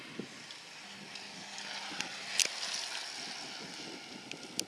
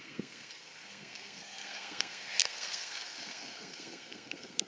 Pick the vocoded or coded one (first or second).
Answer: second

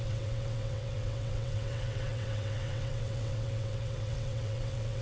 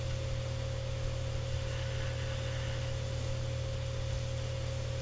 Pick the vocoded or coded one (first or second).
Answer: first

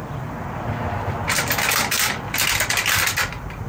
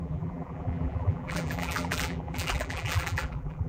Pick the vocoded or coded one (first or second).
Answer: second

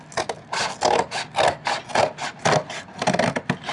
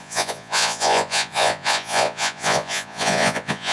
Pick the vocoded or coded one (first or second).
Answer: second